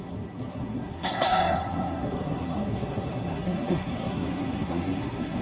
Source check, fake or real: fake